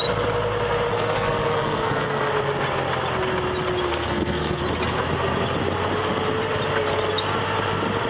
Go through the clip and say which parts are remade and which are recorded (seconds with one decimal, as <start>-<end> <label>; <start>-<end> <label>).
0.0-0.9 recorded; 0.9-2.3 remade; 2.3-3.9 recorded; 3.9-4.6 remade; 4.6-8.1 recorded